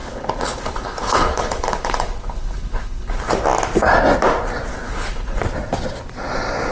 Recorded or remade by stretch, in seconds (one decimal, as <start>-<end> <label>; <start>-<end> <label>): 0.0-3.3 remade; 3.3-4.7 recorded; 4.7-5.4 remade; 5.4-6.7 recorded